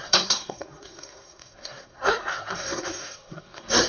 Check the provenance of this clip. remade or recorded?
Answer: remade